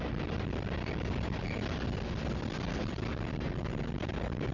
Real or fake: real